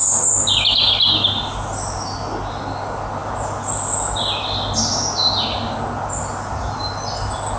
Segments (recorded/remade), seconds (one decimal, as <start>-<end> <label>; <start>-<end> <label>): 0.0-7.6 recorded